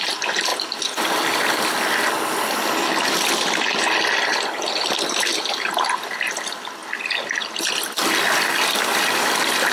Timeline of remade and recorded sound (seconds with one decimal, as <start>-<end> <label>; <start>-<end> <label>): 0.0-5.3 recorded; 5.3-6.1 remade; 6.1-9.7 recorded

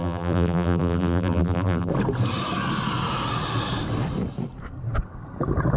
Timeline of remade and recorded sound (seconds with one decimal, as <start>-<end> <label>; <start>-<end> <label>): 0.0-1.9 remade; 1.9-5.8 recorded

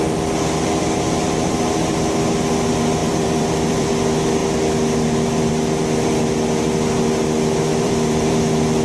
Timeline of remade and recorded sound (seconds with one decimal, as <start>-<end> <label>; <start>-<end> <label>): 0.0-3.0 recorded; 3.0-3.9 remade; 3.9-7.7 recorded; 7.7-8.4 remade; 8.4-8.8 recorded